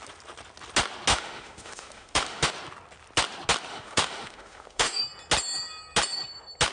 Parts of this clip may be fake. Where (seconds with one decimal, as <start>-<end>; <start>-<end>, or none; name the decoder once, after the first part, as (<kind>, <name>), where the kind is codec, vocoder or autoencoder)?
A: 1.1-2.5 (autoencoder, DAC-VAE); 3.7-5.0